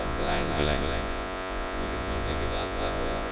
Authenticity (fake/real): fake